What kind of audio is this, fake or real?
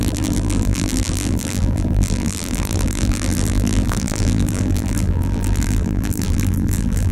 fake